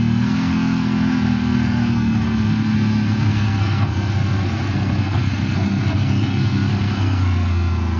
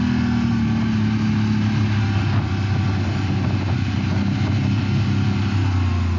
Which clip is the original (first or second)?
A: second